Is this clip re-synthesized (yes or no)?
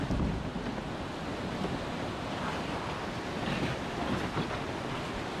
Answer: no